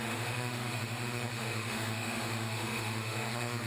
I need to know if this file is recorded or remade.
remade